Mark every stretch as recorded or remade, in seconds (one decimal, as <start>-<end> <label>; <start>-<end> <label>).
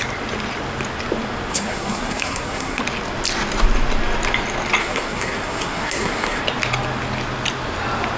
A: 0.0-1.5 recorded; 1.5-2.8 remade; 2.8-4.8 recorded; 4.8-6.4 remade; 6.4-8.2 recorded